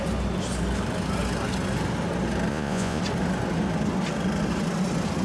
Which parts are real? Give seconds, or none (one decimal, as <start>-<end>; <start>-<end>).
0.0-2.5; 3.0-5.2

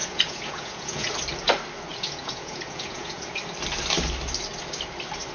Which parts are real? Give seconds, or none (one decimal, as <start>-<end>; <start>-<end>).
1.1-1.9; 3.4-5.3

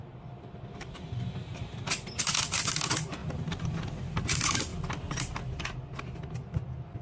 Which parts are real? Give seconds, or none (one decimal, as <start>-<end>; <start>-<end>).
0.0-3.2; 4.0-7.0

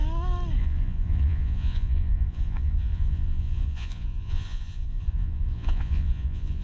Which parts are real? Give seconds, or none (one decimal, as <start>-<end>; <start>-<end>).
0.0-0.6

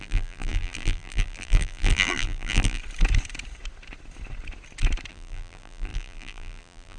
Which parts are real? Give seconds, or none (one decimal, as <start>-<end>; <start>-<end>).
2.8-5.1

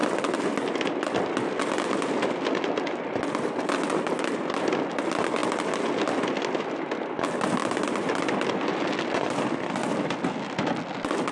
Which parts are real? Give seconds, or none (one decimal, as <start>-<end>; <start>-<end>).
0.0-11.3

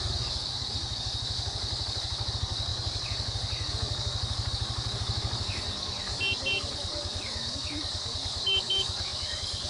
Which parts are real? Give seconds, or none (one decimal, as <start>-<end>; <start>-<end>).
none